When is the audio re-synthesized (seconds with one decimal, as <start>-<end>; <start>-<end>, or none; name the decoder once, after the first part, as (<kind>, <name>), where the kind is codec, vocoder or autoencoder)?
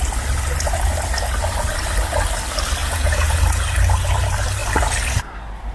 2.8-3.4 (vocoder, Vocos)